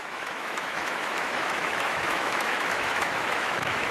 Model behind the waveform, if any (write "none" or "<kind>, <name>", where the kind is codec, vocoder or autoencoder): autoencoder, DAC-VAE